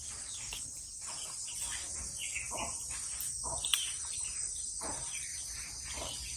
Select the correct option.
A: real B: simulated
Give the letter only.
A